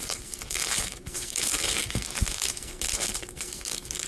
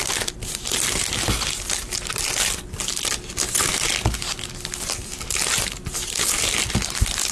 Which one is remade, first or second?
first